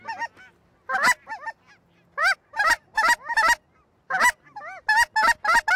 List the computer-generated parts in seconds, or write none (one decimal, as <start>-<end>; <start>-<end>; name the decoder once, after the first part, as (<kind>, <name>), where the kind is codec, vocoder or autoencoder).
none